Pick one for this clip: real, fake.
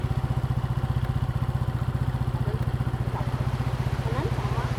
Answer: real